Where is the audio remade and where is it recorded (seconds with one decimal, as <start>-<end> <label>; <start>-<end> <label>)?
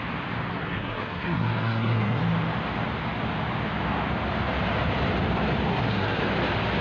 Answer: 0.0-0.5 recorded; 0.5-2.2 remade; 2.2-5.7 recorded; 5.7-6.2 remade; 6.2-6.8 recorded